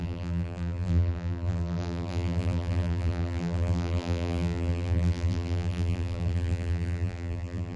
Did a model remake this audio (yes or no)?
yes